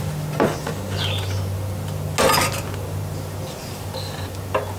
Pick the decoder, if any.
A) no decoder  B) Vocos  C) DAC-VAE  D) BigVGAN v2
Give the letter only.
A